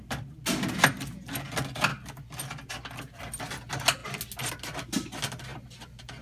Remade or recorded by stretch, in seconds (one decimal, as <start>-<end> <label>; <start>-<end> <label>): 0.0-5.5 recorded; 5.5-6.2 remade